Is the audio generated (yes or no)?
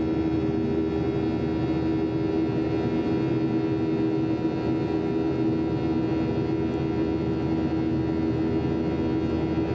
no